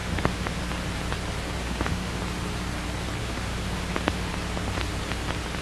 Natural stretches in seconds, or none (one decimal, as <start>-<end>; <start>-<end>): 0.6-1.6; 2.2-3.2; 4.3-5.6

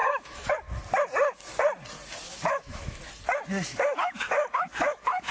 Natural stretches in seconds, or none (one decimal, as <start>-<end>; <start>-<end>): 0.5-2.3; 3.0-3.7